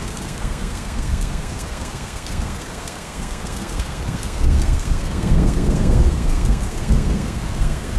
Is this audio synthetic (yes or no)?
yes